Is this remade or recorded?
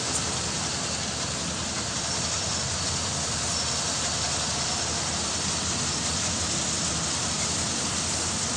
recorded